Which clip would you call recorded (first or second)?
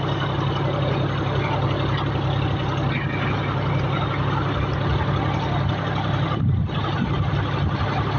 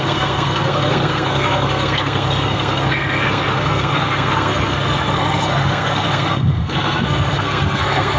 first